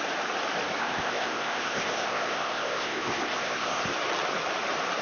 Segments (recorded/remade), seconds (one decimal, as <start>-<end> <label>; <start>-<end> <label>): 0.0-0.8 recorded; 0.8-3.8 remade; 3.8-5.0 recorded